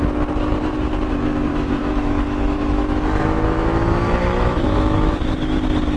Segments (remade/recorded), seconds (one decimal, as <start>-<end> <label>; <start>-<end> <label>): 0.0-1.5 recorded; 1.5-5.1 remade; 5.1-6.0 recorded